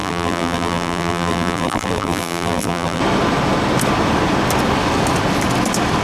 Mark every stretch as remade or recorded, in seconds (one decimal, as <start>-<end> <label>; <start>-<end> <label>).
0.0-3.0 remade; 3.0-6.0 recorded